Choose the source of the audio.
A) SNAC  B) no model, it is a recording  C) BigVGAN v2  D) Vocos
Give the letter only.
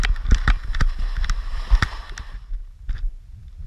B